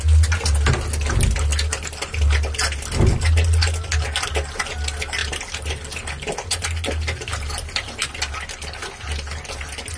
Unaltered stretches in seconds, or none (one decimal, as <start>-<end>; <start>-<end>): 0.0-10.0